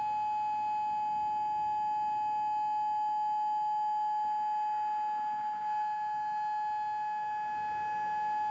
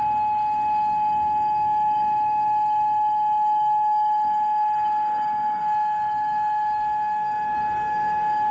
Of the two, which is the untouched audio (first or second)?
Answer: first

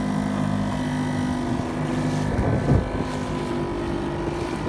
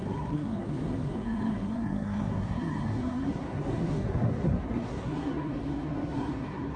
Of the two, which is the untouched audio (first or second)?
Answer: first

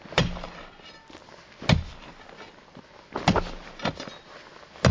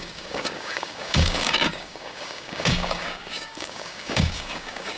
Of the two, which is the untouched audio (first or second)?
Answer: first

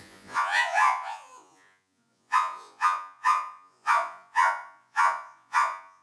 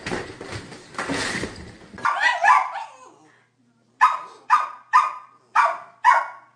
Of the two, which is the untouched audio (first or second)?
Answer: second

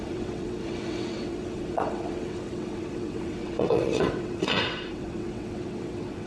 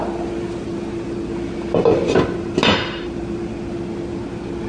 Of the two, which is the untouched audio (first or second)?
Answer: second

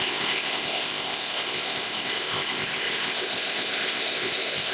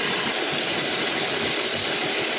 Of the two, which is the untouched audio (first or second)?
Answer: second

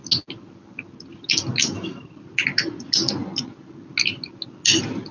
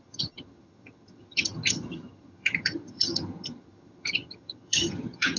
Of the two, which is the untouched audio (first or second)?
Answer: first